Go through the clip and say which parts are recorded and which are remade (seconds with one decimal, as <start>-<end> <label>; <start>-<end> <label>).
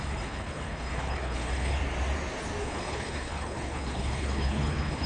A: 0.0-1.8 remade; 1.8-2.6 recorded; 2.6-5.1 remade